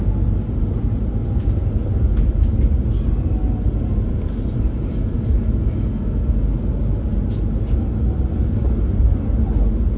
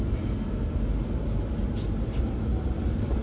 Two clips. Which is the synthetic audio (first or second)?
second